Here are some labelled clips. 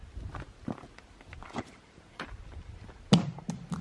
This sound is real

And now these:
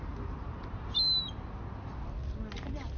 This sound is real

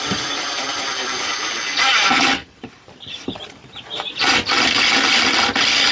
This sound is fake